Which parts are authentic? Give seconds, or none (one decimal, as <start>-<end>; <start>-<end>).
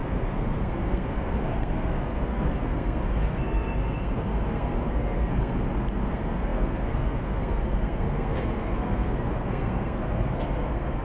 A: none